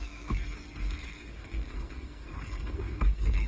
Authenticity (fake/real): fake